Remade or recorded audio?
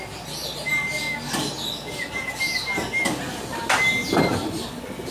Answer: recorded